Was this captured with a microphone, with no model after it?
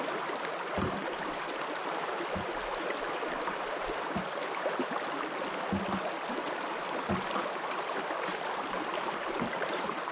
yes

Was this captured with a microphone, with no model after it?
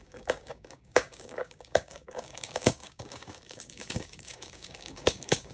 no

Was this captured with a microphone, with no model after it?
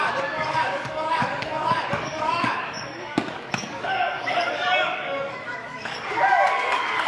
no